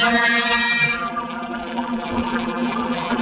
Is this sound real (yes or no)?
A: no